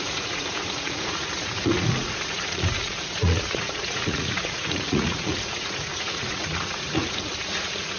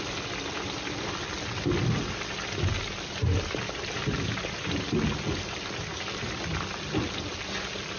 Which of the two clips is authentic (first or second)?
second